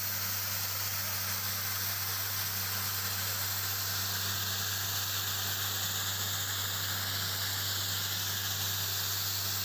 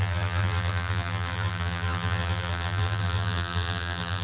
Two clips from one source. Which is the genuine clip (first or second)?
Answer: first